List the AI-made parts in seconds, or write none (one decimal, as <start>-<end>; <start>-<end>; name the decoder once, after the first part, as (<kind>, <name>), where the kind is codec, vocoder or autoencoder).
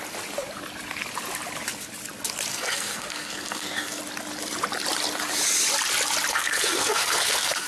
2.5-4.0 (codec, SNAC); 6.3-7.7